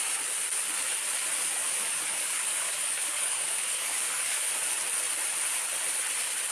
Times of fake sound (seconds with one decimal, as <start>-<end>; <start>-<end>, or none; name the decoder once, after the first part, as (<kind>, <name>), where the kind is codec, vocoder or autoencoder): 1.6-4.5 (codec, DAC)